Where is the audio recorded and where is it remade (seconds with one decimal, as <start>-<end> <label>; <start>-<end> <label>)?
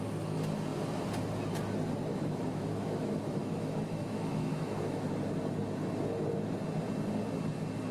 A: 0.0-2.1 recorded; 2.1-5.1 remade; 5.1-7.9 recorded